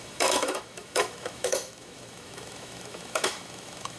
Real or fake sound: fake